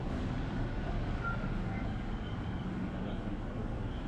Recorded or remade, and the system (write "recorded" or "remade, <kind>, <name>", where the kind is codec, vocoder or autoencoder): remade, codec, DAC